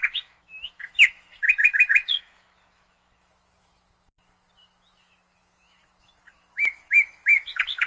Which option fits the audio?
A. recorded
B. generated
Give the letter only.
B